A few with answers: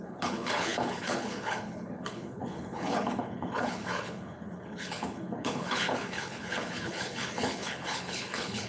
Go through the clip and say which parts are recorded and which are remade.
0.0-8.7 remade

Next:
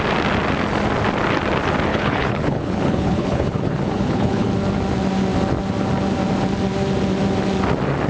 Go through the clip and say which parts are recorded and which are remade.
0.0-1.9 recorded; 1.9-4.5 remade; 4.5-8.1 recorded